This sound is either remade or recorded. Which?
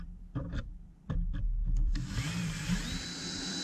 remade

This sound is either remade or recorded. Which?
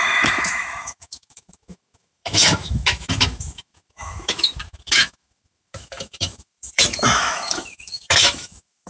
remade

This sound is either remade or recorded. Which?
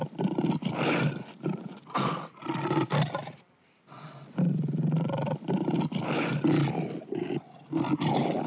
recorded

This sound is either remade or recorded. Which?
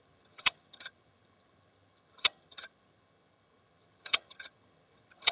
remade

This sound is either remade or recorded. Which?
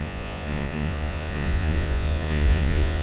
remade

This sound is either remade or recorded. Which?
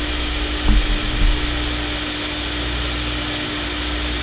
recorded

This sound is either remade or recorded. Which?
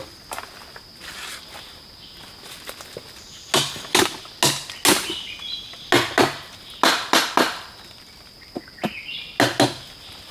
recorded